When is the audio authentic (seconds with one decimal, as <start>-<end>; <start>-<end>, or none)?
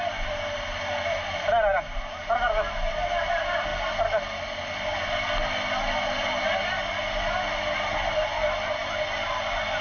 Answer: 0.0-9.8